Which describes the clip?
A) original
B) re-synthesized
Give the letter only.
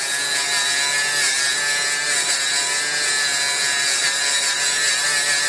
A